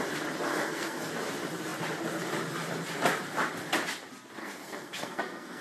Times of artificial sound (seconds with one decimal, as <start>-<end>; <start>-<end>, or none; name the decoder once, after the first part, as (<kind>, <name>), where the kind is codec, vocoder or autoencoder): 0.5-1.1 (codec, SNAC); 4.4-5.6